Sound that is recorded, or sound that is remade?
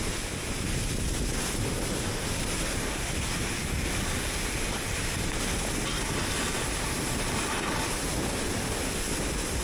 recorded